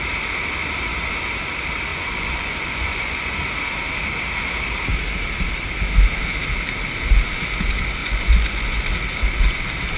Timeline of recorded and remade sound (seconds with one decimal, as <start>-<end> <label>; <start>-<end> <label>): 0.0-1.9 recorded; 1.9-3.4 remade; 3.4-8.0 recorded; 8.0-8.9 remade; 8.9-10.0 recorded